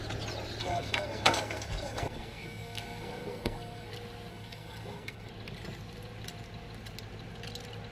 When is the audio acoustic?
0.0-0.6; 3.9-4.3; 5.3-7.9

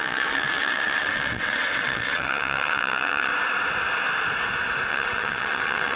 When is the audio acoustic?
3.3-4.9